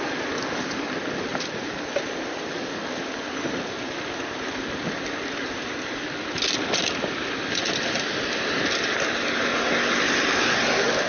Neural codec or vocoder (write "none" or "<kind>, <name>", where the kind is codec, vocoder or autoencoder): none